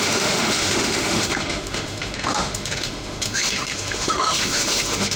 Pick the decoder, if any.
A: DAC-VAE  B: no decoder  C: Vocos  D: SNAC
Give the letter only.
A